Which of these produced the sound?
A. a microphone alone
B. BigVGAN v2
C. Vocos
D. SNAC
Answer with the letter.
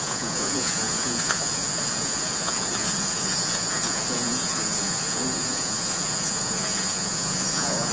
C